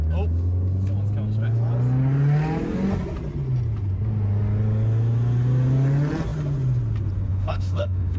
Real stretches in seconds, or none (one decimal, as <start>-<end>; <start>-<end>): 0.0-7.3